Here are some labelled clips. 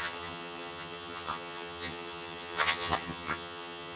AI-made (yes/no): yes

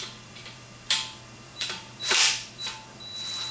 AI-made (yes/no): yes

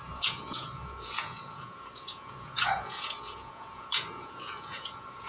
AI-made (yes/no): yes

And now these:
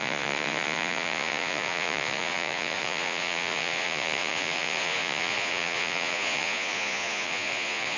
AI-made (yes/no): yes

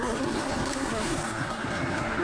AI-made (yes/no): yes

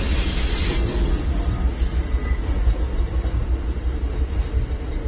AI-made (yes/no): no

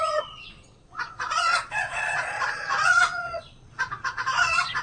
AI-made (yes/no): yes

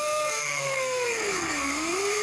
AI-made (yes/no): yes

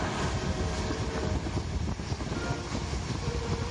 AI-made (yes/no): no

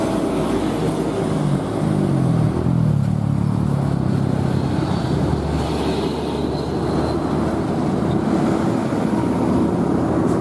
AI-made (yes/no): no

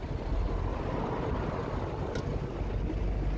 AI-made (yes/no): no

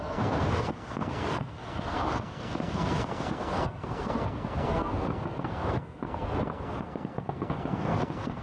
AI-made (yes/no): yes